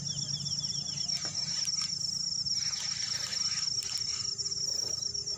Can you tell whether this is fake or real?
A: real